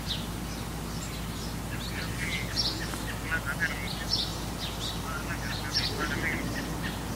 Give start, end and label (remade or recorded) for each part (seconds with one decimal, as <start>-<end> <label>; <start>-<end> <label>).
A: 0.0-7.2 recorded